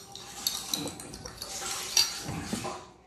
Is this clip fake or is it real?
real